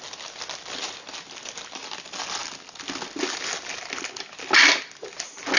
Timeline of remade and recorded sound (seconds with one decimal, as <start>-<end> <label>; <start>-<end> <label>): 0.0-5.6 recorded